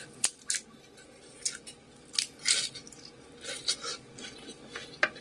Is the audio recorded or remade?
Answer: recorded